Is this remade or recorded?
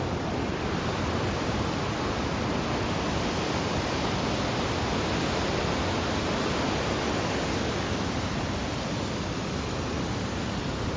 recorded